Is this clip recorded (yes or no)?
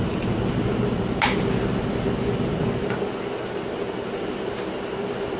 yes